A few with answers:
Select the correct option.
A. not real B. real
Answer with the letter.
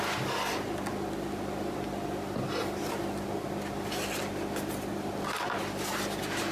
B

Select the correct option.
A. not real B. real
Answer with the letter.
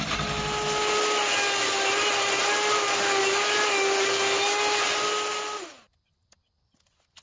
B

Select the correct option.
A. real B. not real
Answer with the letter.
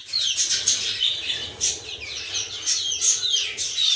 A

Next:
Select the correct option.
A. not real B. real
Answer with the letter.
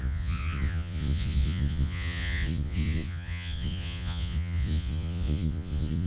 A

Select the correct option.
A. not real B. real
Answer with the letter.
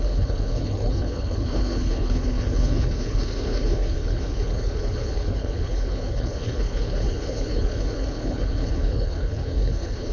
A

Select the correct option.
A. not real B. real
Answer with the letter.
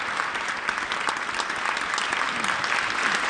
B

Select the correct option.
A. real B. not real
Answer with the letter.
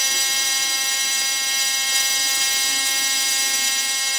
B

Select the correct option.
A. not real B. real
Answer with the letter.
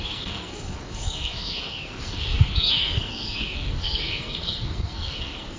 A